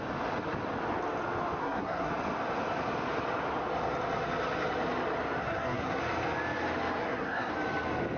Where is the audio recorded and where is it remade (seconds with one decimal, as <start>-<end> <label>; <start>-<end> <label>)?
0.0-1.6 recorded; 1.6-2.1 remade; 2.1-5.4 recorded; 5.4-6.0 remade; 6.0-7.0 recorded; 7.0-7.5 remade; 7.5-8.2 recorded